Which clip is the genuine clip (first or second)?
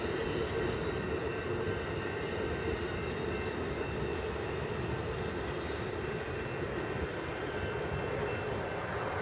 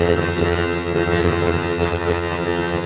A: first